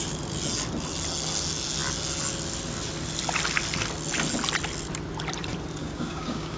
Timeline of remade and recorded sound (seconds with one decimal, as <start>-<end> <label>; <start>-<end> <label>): 0.0-5.8 recorded; 5.8-6.6 remade